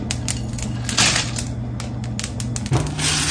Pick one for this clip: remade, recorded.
recorded